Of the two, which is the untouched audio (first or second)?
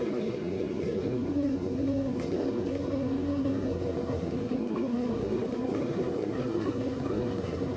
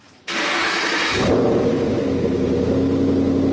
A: second